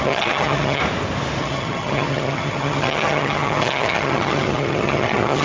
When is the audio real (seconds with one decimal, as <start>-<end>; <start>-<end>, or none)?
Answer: 0.8-1.4